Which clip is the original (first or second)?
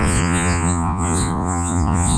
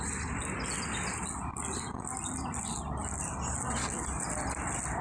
second